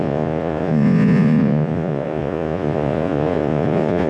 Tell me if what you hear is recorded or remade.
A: remade